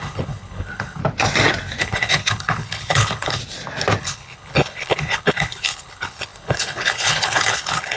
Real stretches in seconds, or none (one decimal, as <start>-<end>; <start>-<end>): 1.0-1.8; 3.4-4.0